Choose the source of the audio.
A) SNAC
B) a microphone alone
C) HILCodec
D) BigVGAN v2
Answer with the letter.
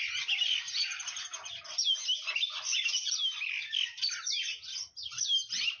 B